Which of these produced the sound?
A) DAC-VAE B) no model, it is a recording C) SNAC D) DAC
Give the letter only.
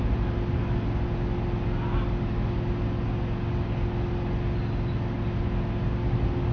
B